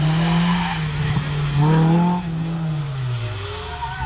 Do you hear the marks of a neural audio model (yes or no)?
no